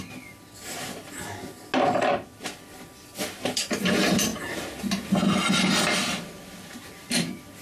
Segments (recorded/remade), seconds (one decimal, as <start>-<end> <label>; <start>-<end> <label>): 0.0-7.6 recorded